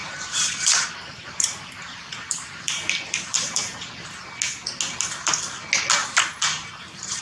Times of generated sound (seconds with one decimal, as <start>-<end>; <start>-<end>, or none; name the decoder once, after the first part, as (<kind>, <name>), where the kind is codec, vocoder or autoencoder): 0.0-4.3 (vocoder, BigVGAN v2); 6.0-7.2